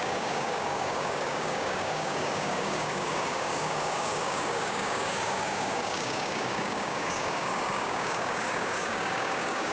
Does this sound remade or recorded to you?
remade